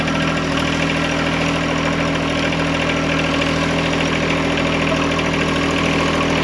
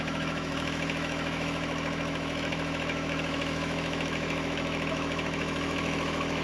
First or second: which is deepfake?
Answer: second